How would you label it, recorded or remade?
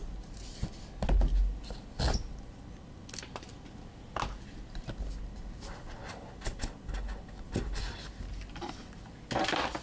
recorded